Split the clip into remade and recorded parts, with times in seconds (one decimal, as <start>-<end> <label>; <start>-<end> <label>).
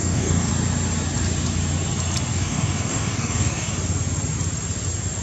0.0-0.5 remade; 0.5-2.3 recorded; 2.3-3.7 remade; 3.7-5.2 recorded